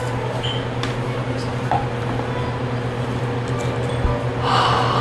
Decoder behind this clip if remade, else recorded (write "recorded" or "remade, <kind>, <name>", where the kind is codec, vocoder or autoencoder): recorded